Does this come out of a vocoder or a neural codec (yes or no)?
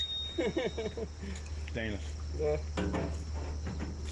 no